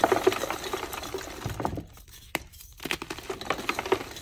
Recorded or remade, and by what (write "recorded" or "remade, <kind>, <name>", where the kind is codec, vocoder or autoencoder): recorded